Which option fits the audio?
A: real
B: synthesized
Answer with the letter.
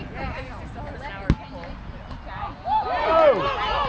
A